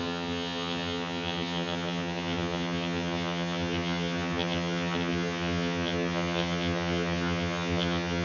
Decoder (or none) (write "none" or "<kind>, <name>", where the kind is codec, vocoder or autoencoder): vocoder, HiFi-GAN